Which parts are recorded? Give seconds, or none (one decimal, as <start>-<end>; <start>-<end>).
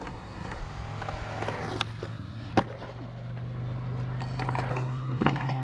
0.6-2.1; 2.5-4.7